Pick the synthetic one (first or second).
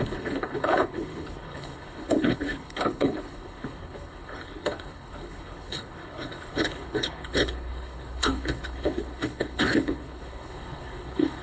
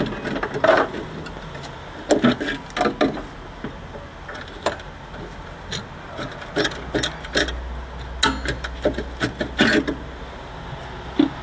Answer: first